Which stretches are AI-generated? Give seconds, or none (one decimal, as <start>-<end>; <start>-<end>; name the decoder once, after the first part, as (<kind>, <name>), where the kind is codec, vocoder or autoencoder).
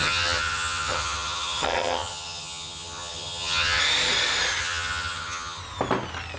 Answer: 0.0-3.8 (vocoder, HiFi-GAN); 4.6-5.6